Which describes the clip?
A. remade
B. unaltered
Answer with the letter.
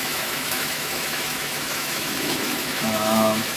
A